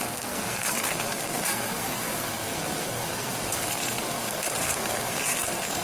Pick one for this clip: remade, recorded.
remade